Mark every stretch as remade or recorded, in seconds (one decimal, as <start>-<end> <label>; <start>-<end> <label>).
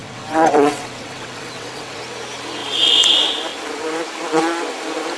0.0-2.0 remade; 2.0-5.2 recorded